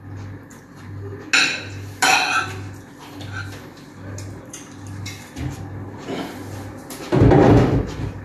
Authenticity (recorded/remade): recorded